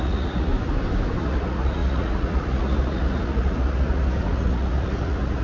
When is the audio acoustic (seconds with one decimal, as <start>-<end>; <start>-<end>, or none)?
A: 0.5-1.2